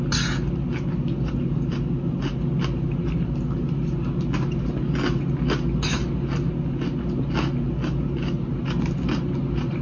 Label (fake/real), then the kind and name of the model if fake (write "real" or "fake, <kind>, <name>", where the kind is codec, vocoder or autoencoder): real